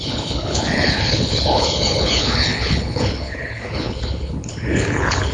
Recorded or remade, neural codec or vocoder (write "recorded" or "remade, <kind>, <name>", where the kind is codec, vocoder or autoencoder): remade, codec, HILCodec